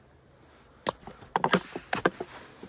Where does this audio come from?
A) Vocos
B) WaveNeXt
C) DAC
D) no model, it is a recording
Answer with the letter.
D